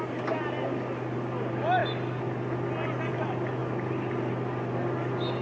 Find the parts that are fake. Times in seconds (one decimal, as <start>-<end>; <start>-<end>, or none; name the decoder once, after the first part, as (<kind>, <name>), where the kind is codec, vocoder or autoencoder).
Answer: none